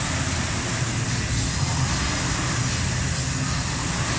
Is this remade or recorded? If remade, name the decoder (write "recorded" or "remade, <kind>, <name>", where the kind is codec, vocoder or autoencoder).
recorded